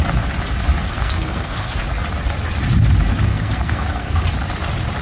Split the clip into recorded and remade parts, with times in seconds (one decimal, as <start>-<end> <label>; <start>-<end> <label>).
0.0-0.8 recorded; 0.8-1.8 remade; 1.8-3.3 recorded; 3.3-4.2 remade; 4.2-5.0 recorded